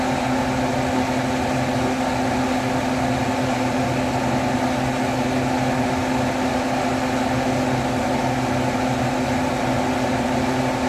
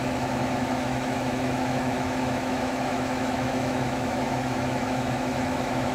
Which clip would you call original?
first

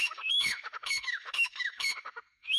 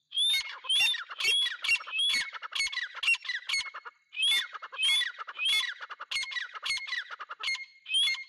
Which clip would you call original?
second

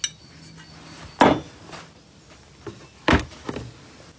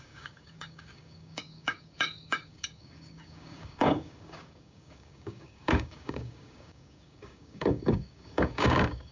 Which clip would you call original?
first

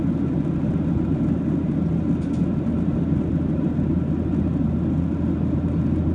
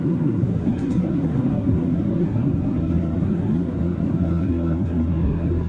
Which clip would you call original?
first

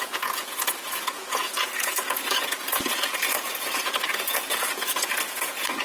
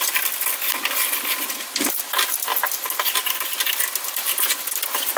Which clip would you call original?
second